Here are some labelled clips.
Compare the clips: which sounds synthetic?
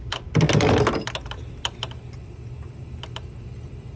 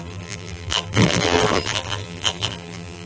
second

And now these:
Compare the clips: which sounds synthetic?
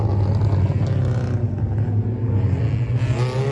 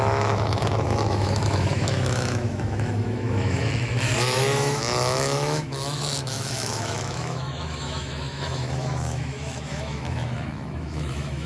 second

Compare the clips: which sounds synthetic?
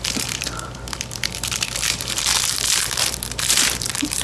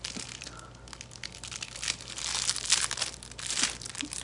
first